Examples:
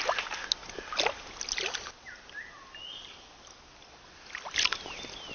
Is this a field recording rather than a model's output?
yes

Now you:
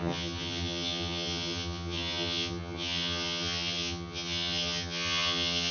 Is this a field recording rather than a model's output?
no